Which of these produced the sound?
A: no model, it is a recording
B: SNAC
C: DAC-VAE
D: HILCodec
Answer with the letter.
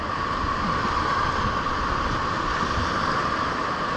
A